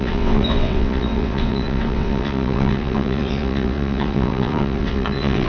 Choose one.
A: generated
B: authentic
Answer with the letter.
A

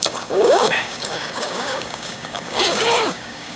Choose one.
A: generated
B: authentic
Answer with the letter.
A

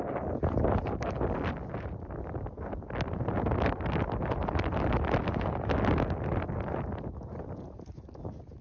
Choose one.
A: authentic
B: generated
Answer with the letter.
A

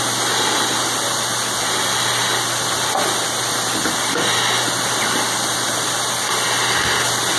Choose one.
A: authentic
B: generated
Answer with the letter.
A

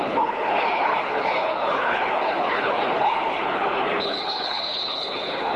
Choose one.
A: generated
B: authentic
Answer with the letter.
A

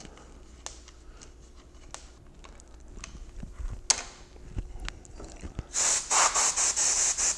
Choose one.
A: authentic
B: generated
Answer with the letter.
A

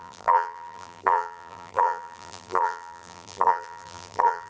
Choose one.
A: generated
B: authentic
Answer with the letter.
A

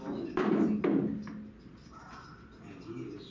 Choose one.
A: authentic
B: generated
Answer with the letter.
A